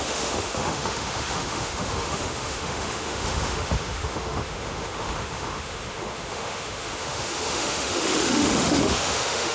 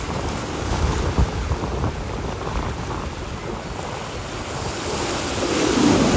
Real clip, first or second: second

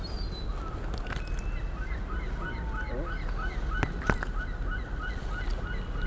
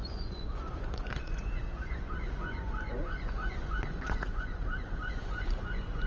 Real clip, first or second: first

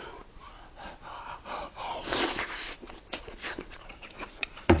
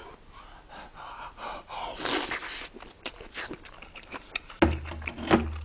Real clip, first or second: second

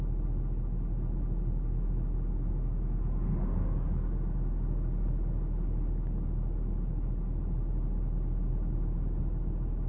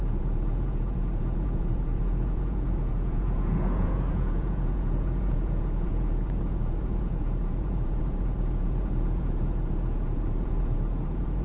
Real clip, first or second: first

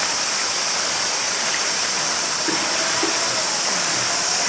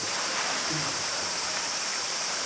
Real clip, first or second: first